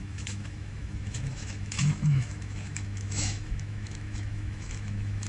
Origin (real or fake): fake